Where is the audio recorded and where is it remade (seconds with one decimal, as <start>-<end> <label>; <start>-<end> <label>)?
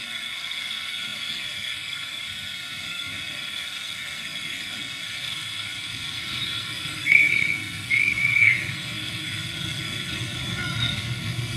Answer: 0.0-11.6 remade